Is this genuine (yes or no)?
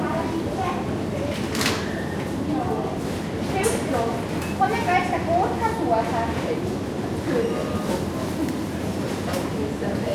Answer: yes